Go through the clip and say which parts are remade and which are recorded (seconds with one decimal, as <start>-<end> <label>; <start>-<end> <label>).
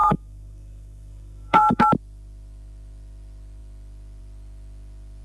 0.0-1.9 remade; 1.9-5.2 recorded